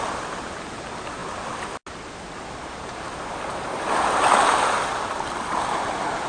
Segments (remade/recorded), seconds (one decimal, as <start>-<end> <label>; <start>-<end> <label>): 0.0-6.3 recorded